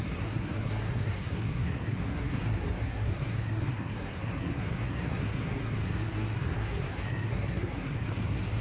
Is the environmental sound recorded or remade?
remade